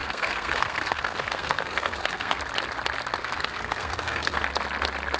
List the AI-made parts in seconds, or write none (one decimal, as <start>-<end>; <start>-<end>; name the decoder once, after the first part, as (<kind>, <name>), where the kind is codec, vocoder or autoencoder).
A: 0.0-2.4 (codec, SNAC); 3.2-4.4